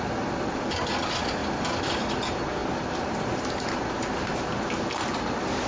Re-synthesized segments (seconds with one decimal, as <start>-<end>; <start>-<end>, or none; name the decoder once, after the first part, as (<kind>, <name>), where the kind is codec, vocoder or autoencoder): 1.4-2.0 (vocoder, BigVGAN v2); 2.6-4.6